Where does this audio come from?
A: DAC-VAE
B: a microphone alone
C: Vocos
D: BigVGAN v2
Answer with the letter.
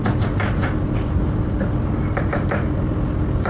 B